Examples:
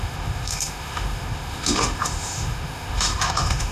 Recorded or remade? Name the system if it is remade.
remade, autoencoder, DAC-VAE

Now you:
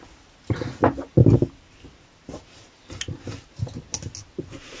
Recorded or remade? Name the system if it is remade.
recorded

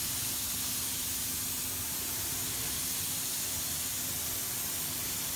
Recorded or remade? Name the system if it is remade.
recorded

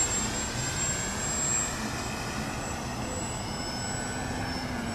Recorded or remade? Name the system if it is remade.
recorded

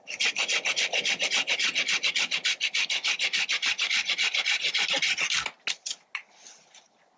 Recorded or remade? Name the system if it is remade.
recorded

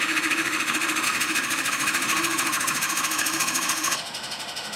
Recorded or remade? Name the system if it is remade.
remade, autoencoder, DAC-VAE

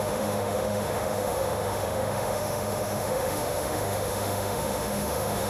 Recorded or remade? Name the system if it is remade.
remade, autoencoder, DAC-VAE